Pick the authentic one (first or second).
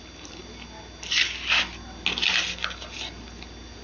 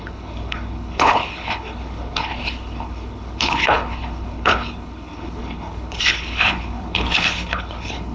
first